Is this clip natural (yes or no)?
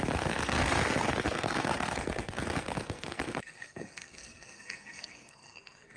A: no